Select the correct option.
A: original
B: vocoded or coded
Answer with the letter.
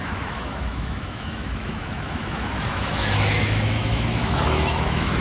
B